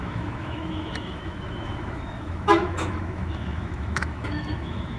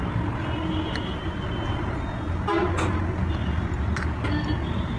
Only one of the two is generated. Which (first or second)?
first